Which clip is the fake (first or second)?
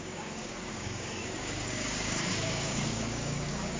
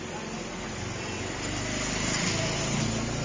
first